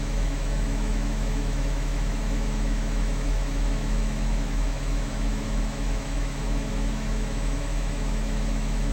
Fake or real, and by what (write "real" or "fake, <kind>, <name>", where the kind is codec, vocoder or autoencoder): fake, autoencoder, DAC-VAE